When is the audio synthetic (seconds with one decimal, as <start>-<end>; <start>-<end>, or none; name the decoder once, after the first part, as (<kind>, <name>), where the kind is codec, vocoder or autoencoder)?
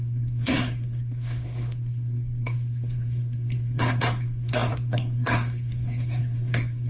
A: 0.0-6.9 (codec, SNAC)